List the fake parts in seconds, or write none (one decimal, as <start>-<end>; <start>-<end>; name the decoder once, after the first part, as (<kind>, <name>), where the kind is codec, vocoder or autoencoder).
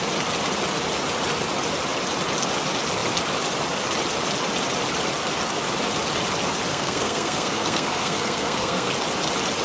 6.7-8.9 (codec, SNAC)